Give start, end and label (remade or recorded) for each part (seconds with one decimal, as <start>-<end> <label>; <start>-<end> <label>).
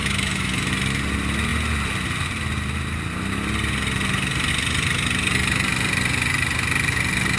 0.0-0.7 remade; 0.7-7.4 recorded